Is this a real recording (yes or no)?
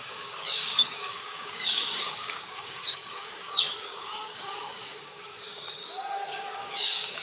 no